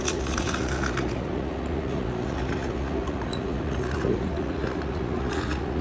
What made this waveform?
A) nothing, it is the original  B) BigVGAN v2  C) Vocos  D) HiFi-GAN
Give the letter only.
C